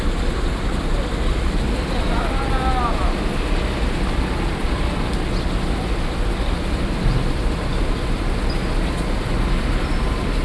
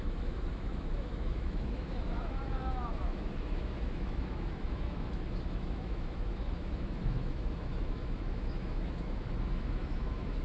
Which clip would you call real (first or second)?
first